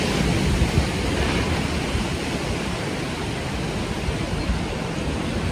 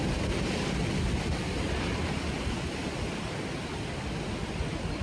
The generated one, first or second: second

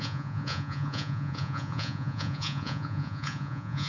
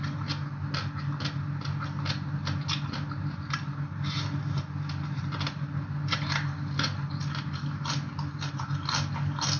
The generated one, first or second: first